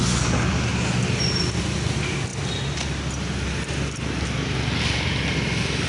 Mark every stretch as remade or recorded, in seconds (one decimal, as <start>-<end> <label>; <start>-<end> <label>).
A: 0.0-5.9 recorded